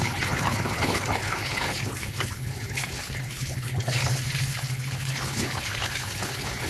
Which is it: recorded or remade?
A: remade